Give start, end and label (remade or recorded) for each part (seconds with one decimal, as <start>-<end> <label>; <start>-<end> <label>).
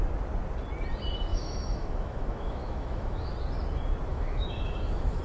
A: 0.0-1.3 recorded; 1.3-3.3 remade; 3.3-4.1 recorded; 4.1-5.2 remade